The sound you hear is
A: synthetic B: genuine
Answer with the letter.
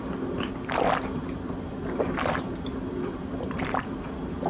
B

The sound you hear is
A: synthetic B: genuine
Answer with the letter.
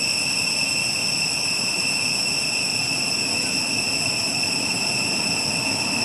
B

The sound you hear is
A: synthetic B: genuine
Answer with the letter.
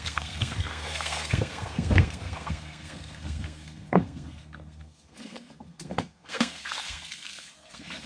A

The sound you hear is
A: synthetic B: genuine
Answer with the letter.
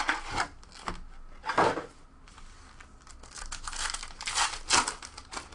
B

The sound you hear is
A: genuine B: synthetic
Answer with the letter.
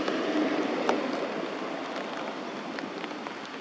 A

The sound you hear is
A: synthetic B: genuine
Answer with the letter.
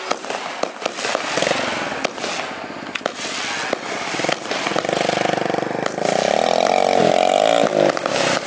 B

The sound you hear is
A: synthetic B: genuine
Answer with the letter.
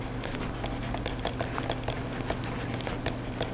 B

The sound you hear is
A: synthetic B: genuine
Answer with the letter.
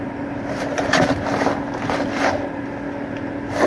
B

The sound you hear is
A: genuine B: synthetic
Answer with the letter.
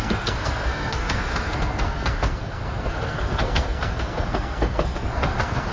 B